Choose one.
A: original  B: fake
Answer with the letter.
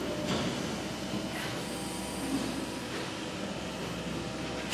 A